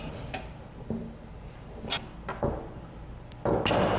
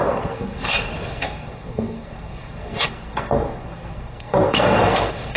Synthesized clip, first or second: second